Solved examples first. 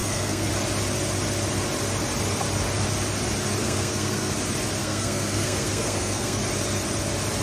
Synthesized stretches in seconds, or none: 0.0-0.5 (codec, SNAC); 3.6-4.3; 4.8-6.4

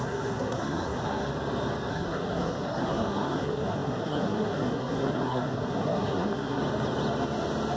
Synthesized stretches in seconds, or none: 0.0-1.3 (codec, SNAC); 1.9-6.6